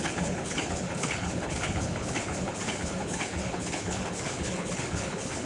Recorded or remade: remade